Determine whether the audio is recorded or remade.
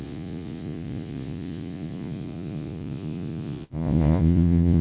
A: remade